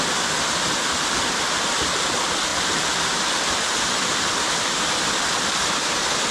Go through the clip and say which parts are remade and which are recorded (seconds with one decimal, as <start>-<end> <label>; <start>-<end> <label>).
0.0-6.3 recorded